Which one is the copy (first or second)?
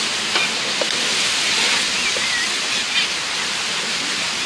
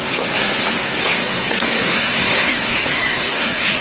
second